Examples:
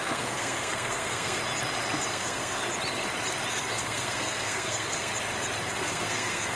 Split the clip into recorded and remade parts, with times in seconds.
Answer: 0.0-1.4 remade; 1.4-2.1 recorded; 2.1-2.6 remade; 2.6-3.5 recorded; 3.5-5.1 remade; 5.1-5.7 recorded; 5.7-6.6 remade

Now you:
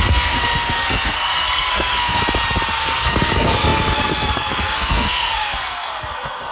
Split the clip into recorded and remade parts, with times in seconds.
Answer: 0.0-2.2 remade; 2.2-2.8 recorded; 2.8-6.5 remade

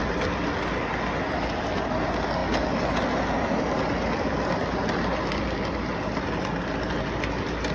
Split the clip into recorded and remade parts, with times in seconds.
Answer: 0.0-7.7 recorded

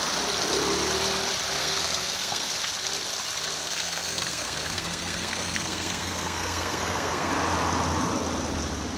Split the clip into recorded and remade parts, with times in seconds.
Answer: 0.0-1.6 recorded; 1.6-2.5 remade; 2.5-3.6 recorded; 3.6-7.3 remade; 7.3-9.0 recorded

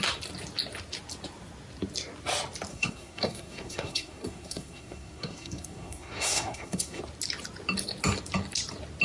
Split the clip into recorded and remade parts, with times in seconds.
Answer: 0.0-2.7 recorded; 2.7-7.0 remade; 7.0-9.0 recorded

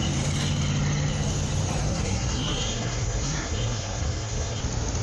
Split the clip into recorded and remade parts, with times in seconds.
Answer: 0.0-1.8 recorded; 1.8-4.6 remade; 4.6-5.0 recorded

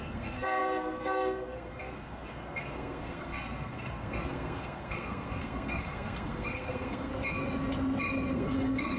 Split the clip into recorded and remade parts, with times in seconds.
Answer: 0.0-7.1 remade; 7.1-8.3 recorded; 8.3-9.0 remade

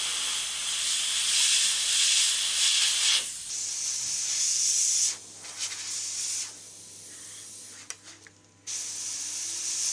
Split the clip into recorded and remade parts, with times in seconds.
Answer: 0.0-9.9 recorded